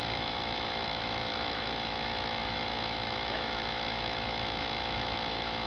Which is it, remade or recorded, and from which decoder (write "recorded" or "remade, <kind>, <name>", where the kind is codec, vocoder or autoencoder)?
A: remade, autoencoder, DAC-VAE